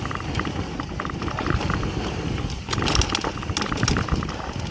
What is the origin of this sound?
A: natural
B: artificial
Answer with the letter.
A